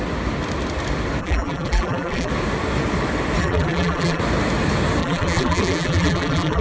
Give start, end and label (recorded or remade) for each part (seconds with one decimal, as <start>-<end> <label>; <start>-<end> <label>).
0.0-1.2 recorded; 1.2-2.3 remade; 2.3-3.4 recorded; 3.4-4.2 remade; 4.2-5.0 recorded; 5.0-6.6 remade